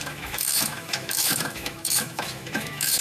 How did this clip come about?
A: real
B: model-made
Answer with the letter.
B